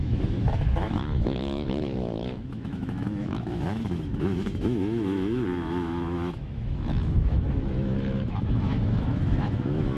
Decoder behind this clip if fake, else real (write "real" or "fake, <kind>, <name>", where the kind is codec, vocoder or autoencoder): fake, autoencoder, DAC-VAE